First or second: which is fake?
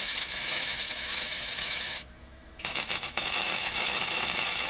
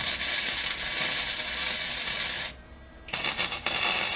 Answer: first